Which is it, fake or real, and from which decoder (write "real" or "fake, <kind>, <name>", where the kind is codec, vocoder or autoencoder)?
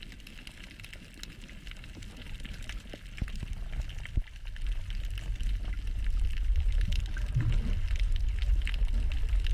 real